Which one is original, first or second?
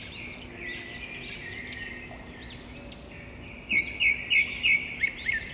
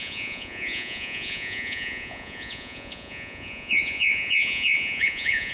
first